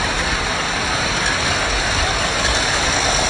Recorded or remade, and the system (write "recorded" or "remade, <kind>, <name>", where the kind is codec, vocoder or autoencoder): recorded